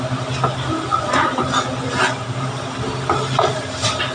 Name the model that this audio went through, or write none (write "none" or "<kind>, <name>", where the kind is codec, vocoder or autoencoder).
none